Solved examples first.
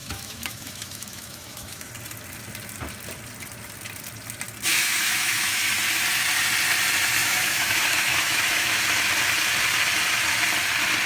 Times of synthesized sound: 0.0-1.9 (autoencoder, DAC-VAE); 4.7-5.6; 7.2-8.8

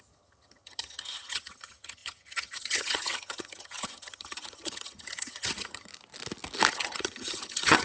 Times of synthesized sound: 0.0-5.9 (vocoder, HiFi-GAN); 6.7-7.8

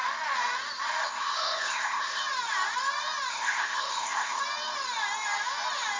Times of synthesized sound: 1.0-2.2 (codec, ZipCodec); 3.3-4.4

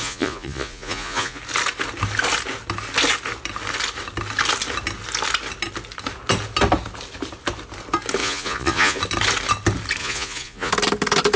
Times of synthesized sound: 0.0-1.4 (vocoder, Vocos); 8.2-9.0; 10.0-10.7

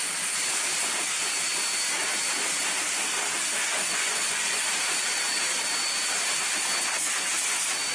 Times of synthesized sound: 3.8-4.6 (vocoder, Vocos)

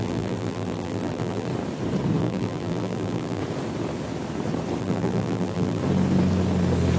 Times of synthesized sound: 0.0-1.5 (vocoder, BigVGAN v2); 2.2-3.4; 4.8-5.8

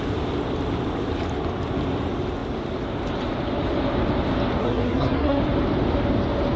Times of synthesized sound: 4.6-5.4 (codec, SNAC)